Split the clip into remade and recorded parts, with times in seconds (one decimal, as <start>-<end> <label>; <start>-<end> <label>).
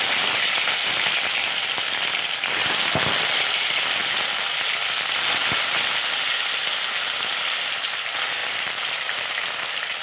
0.0-4.0 recorded; 4.0-5.6 remade; 5.6-8.4 recorded; 8.4-8.9 remade; 8.9-10.0 recorded